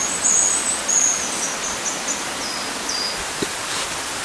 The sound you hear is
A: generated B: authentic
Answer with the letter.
B